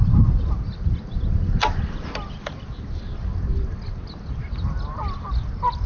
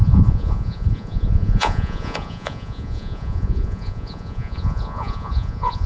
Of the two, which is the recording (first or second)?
first